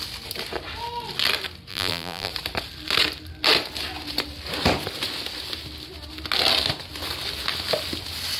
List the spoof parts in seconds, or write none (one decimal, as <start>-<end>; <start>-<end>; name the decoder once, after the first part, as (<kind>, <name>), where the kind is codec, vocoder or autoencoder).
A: 1.7-2.3 (vocoder, BigVGAN v2)